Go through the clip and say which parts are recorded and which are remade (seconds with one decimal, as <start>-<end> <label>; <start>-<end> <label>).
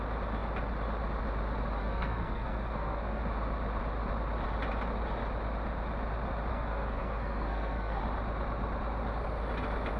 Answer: 0.0-1.8 recorded; 1.8-3.2 remade; 3.2-6.5 recorded; 6.5-8.0 remade; 8.0-10.0 recorded